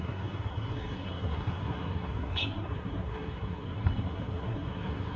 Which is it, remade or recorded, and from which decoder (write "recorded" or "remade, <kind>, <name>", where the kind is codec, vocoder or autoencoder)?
remade, codec, SNAC